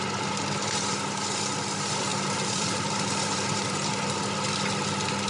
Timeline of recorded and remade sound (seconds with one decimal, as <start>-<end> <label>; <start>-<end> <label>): 0.0-2.1 recorded; 2.1-4.2 remade; 4.2-5.3 recorded